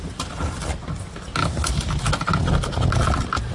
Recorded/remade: recorded